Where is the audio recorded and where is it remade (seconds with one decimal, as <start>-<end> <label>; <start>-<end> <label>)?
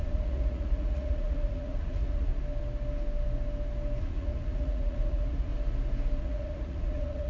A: 0.0-2.3 remade; 2.3-4.0 recorded; 4.0-5.5 remade; 5.5-6.2 recorded; 6.2-7.3 remade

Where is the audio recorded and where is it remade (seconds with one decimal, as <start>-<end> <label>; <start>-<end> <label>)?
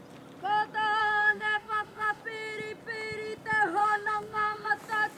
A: 0.0-1.0 recorded; 1.0-2.2 remade; 2.2-3.8 recorded; 3.8-4.7 remade; 4.7-5.2 recorded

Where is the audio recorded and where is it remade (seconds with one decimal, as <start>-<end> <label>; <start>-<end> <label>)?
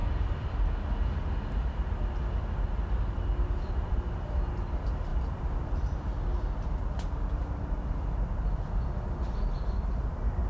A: 0.0-5.1 recorded; 5.1-6.1 remade; 6.1-10.5 recorded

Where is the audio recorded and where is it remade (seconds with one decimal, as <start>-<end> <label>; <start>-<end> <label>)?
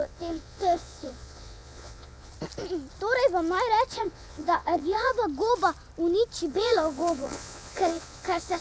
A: 0.0-2.3 remade; 2.3-3.9 recorded; 3.9-5.1 remade; 5.1-6.5 recorded; 6.5-8.6 remade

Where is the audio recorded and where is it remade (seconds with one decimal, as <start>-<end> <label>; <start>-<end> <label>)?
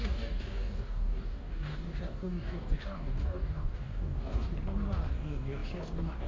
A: 0.0-4.5 remade; 4.5-5.1 recorded; 5.1-6.3 remade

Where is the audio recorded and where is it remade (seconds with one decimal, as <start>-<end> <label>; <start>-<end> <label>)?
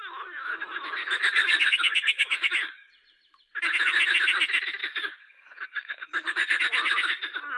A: 0.0-1.0 recorded; 1.0-2.9 remade; 2.9-4.8 recorded; 4.8-6.6 remade; 6.6-7.6 recorded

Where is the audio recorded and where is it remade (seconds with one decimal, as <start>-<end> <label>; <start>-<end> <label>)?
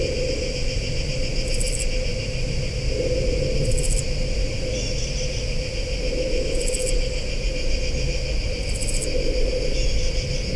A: 0.0-10.6 recorded